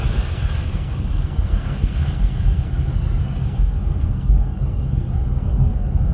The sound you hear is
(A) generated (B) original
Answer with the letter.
A